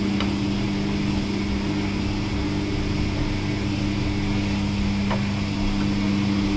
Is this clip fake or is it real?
real